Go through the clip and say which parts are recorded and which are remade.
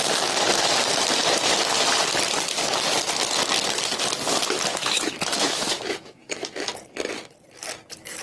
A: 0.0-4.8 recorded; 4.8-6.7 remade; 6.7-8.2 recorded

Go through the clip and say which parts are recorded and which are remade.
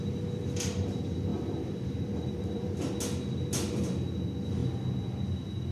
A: 0.0-1.3 recorded; 1.3-3.0 remade; 3.0-5.7 recorded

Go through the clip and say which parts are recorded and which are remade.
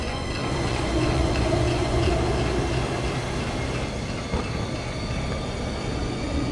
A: 0.0-2.1 remade; 2.1-6.0 recorded; 6.0-6.5 remade